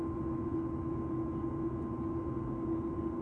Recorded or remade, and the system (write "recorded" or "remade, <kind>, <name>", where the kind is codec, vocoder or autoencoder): recorded